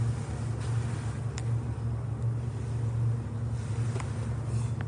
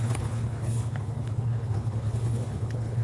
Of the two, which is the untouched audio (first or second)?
first